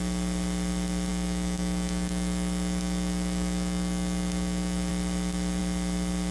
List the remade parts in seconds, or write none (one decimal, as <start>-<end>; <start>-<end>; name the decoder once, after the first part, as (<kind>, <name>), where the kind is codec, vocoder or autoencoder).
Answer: 1.1-4.9 (autoencoder, DAC-VAE)